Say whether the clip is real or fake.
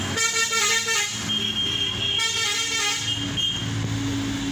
real